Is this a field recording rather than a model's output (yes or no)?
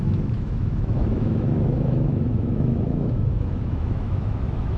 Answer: no